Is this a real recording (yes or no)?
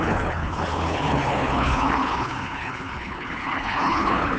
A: no